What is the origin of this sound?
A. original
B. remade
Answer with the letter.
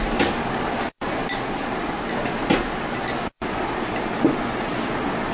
A